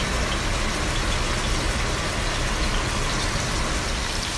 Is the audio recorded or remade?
recorded